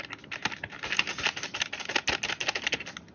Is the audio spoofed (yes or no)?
no